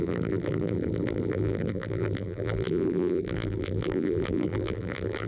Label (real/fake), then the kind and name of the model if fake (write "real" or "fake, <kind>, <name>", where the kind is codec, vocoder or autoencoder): fake, vocoder, BigVGAN v2